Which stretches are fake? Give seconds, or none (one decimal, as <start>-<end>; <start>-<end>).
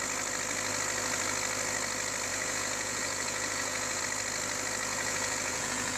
2.3-4.0; 4.9-6.0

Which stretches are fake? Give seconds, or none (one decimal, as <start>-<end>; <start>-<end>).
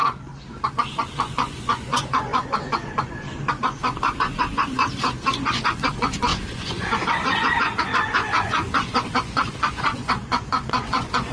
0.7-4.8; 5.3-11.3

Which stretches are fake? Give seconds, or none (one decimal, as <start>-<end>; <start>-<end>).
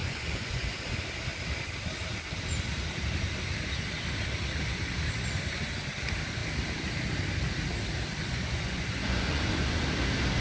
0.0-0.9; 8.2-9.8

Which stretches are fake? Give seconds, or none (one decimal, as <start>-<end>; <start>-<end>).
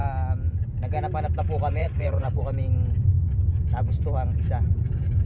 1.8-2.4